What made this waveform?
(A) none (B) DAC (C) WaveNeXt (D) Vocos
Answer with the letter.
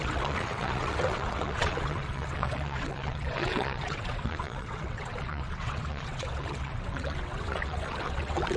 C